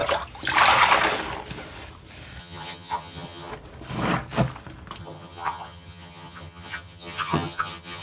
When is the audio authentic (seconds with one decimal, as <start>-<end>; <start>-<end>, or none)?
0.0-2.4; 3.5-5.0